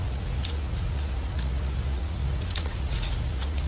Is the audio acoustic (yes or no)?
no